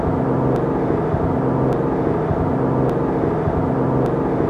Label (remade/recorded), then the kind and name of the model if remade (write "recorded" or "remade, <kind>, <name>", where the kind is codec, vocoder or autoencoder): recorded